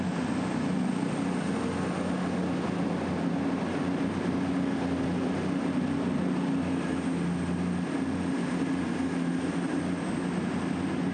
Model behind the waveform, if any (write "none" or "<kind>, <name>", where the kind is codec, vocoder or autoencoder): none